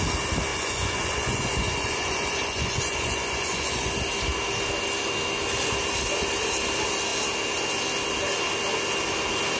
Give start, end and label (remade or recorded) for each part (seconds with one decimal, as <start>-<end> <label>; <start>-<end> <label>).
0.0-0.5 recorded; 0.5-3.9 remade; 3.9-9.6 recorded